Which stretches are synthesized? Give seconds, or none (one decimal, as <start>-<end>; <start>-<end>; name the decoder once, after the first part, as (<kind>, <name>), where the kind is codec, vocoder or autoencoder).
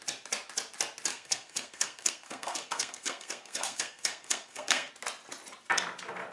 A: 1.1-4.9 (codec, SNAC)